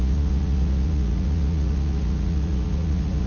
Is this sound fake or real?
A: fake